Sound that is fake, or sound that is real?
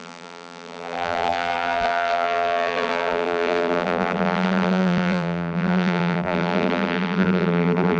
fake